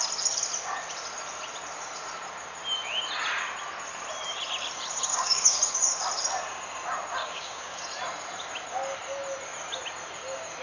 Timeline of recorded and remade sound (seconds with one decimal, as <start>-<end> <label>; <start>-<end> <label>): 0.0-5.1 recorded; 5.1-6.0 remade; 6.0-7.2 recorded; 7.2-7.8 remade; 7.8-10.6 recorded